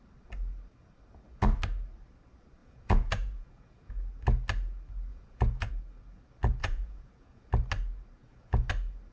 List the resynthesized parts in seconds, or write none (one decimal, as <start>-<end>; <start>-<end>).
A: 2.6-3.9; 5.1-5.7; 6.6-7.5; 8.2-8.7